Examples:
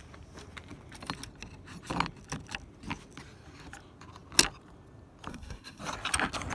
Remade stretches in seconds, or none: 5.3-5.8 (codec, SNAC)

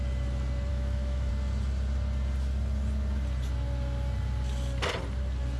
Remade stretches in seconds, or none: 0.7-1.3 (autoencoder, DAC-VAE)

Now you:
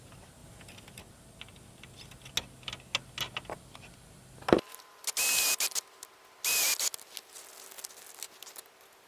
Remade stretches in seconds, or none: none

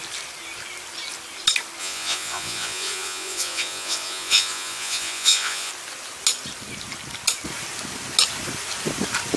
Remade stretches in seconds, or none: 1.8-5.7 (vocoder, Vocos)